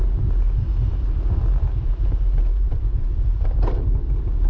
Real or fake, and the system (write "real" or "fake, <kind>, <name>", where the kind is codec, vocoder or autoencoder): real